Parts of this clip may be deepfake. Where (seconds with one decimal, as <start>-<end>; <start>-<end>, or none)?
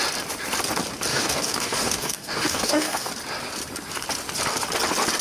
1.1-3.1